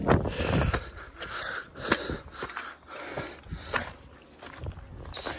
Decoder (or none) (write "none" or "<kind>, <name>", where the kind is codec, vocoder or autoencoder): none